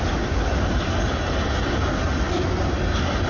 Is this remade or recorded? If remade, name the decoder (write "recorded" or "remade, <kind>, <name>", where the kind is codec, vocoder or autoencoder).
recorded